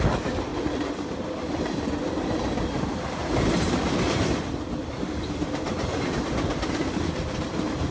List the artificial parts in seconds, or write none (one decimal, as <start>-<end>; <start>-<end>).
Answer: none